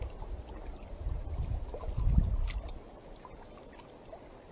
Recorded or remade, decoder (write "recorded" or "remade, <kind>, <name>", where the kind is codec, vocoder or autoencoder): recorded